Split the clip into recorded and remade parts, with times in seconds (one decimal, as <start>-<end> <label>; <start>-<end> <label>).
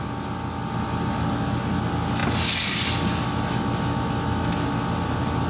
0.0-5.5 recorded